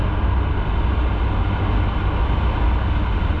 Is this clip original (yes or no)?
yes